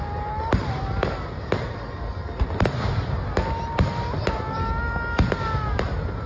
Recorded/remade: recorded